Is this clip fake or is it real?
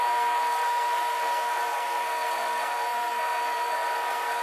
fake